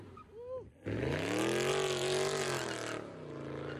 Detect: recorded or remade recorded